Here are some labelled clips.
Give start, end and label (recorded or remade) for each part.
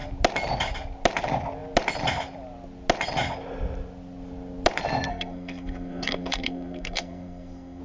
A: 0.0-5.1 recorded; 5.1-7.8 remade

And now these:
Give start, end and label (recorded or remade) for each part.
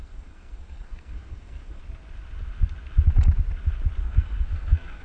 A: 0.0-1.8 remade; 1.8-4.0 recorded; 4.0-5.0 remade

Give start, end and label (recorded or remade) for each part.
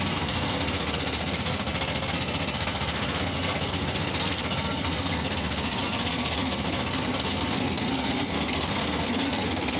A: 0.0-9.8 remade